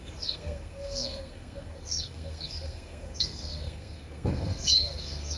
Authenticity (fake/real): fake